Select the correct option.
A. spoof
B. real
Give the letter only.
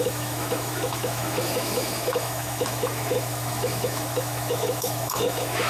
A